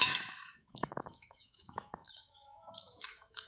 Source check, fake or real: fake